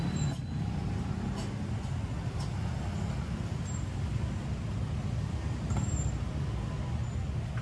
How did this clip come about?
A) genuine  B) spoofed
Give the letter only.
A